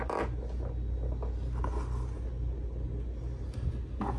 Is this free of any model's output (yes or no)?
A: yes